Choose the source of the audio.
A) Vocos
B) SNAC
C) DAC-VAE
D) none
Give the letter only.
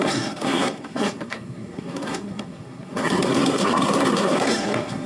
B